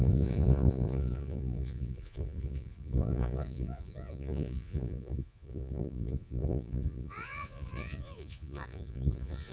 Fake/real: fake